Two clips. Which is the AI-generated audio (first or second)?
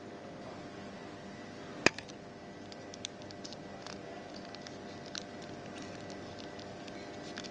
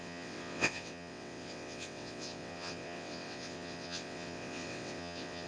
second